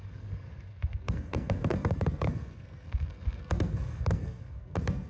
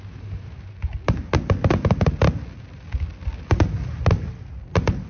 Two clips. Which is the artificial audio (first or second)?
first